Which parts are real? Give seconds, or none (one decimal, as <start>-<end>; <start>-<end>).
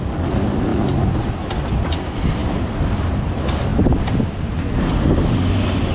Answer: 0.0-3.7; 4.2-5.9